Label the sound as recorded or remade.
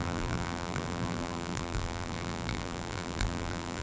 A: remade